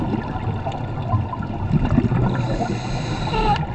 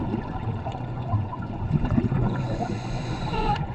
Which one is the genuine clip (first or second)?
first